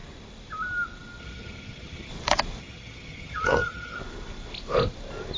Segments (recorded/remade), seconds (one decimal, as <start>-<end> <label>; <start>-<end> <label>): 0.0-1.2 recorded; 1.2-2.1 remade; 2.1-2.6 recorded; 2.6-4.0 remade; 4.0-5.4 recorded